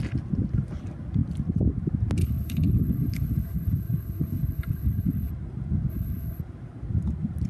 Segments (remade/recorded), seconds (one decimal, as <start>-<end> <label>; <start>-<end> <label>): 0.0-2.2 recorded; 2.2-5.3 remade; 5.3-5.9 recorded; 5.9-6.4 remade; 6.4-7.5 recorded